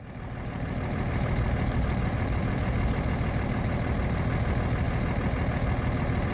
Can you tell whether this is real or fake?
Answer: real